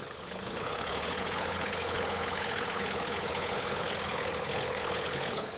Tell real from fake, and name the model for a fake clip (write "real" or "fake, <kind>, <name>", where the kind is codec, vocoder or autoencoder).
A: fake, codec, HILCodec